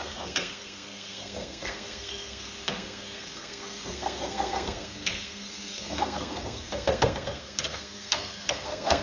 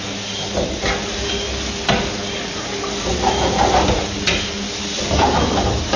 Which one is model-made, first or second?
first